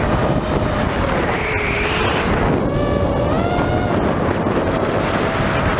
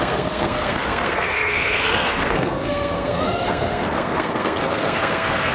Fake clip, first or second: second